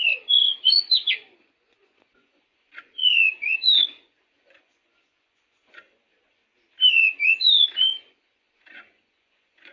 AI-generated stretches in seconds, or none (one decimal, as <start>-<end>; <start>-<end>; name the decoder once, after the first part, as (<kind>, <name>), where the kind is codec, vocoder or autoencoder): 0.0-6.4 (vocoder, Vocos); 6.9-9.7